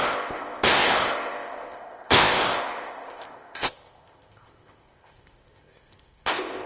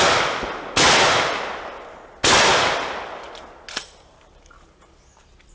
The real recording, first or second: second